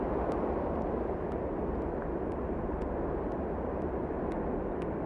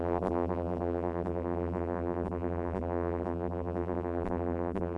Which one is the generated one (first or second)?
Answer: second